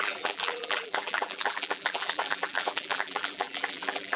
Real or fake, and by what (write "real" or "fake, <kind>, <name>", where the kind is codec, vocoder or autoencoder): fake, vocoder, BigVGAN v2